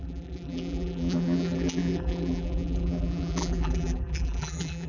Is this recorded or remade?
remade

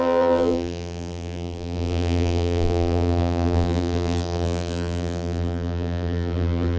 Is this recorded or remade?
remade